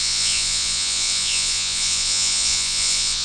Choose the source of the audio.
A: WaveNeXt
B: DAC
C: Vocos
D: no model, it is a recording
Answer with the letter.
C